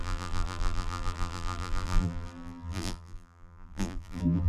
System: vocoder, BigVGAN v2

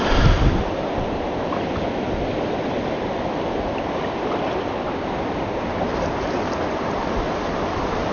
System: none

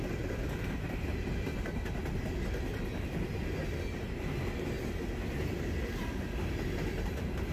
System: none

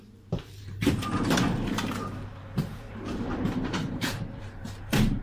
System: vocoder, BigVGAN v2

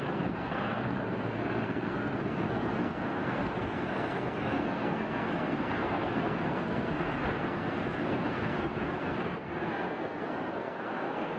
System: codec, SNAC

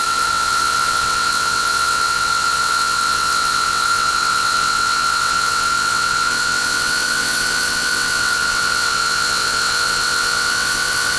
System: vocoder, WaveNeXt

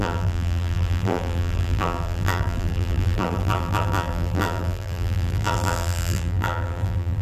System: vocoder, BigVGAN v2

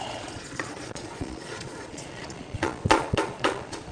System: vocoder, Vocos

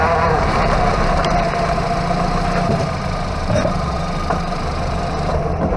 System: vocoder, BigVGAN v2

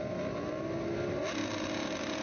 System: none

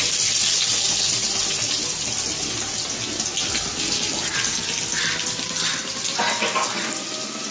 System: none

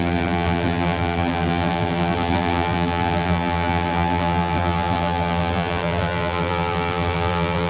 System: vocoder, BigVGAN v2